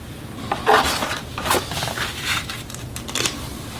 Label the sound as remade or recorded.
remade